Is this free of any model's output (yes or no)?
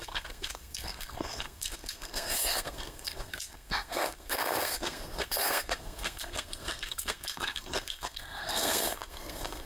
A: no